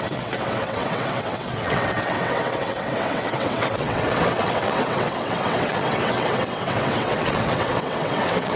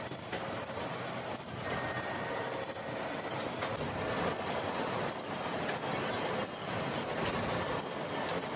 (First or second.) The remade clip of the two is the first